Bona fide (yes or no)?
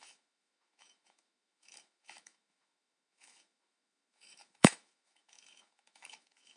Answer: no